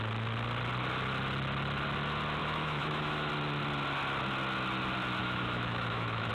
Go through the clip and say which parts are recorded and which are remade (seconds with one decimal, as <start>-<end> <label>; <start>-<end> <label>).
0.0-2.4 recorded; 2.4-3.3 remade; 3.3-5.2 recorded; 5.2-6.3 remade